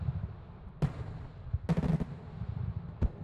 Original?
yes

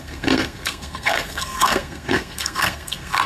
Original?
no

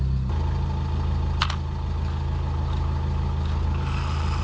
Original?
yes